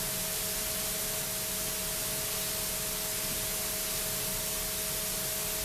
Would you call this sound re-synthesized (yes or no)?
no